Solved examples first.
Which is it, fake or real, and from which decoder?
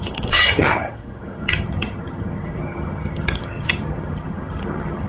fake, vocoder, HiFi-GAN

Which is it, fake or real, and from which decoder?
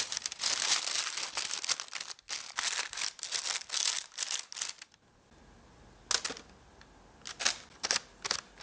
real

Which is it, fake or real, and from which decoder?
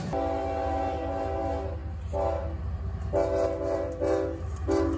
real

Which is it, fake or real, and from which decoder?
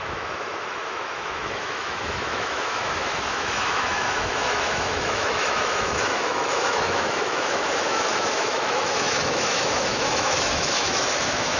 fake, autoencoder, DAC-VAE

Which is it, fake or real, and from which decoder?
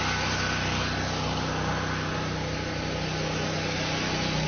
real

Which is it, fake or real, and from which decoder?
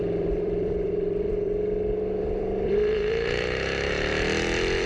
fake, vocoder, BigVGAN v2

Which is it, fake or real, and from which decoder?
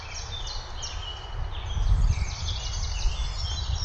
real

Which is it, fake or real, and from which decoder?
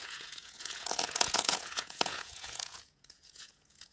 fake, vocoder, Vocos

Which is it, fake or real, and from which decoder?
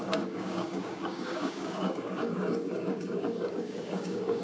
fake, codec, DAC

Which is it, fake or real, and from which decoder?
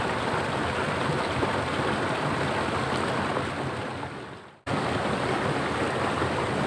real